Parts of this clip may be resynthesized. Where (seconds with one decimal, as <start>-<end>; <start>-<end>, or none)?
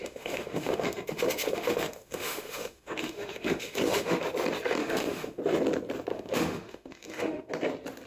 0.0-4.2; 4.8-5.4; 6.1-7.5